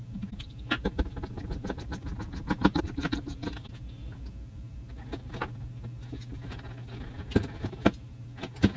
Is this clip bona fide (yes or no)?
yes